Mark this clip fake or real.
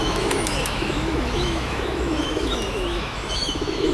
fake